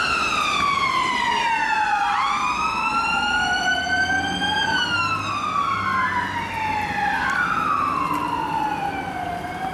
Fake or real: real